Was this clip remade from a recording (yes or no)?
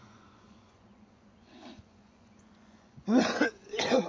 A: yes